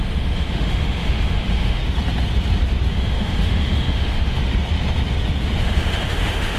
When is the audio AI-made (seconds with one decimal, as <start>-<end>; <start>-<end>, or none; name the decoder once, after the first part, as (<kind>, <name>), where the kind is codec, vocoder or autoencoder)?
0.0-1.8 (autoencoder, DAC-VAE); 2.9-4.4; 5.6-6.6